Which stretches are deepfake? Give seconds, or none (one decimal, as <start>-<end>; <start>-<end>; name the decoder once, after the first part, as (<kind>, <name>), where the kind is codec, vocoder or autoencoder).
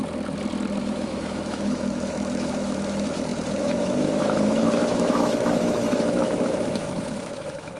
0.8-7.8 (autoencoder, DAC-VAE)